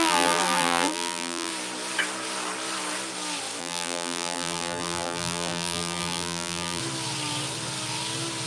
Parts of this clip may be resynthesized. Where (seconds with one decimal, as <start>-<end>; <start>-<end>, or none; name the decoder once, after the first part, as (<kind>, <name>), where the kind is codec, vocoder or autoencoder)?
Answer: 0.0-1.5 (vocoder, BigVGAN v2); 3.6-6.8